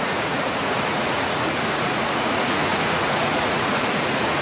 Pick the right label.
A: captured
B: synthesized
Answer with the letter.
B